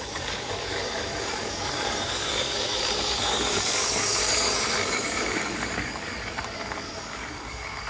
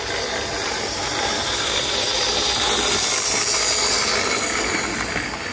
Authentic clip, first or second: second